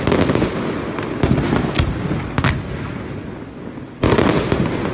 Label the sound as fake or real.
real